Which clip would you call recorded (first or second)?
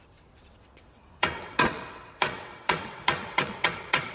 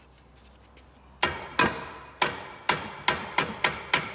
second